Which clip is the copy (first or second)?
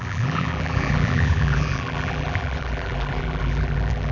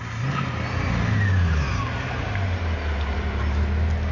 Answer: first